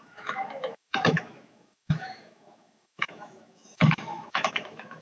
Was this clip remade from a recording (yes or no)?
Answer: yes